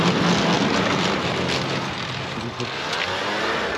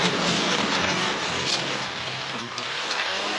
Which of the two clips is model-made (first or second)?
second